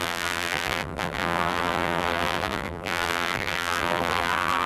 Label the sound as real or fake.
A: fake